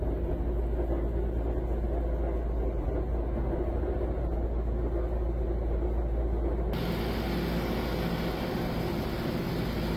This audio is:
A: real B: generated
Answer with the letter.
A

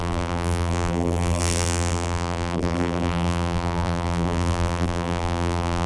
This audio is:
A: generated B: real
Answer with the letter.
A